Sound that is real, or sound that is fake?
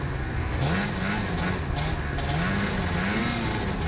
real